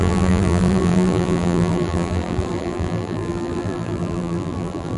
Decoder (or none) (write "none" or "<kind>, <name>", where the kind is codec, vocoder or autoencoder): vocoder, BigVGAN v2